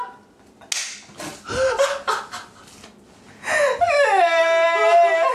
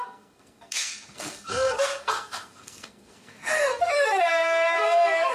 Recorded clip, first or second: first